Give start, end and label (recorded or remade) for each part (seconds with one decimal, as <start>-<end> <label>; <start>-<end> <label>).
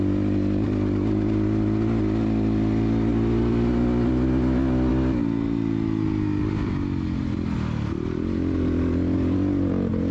0.0-10.1 recorded